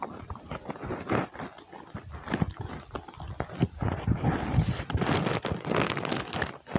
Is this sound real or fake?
real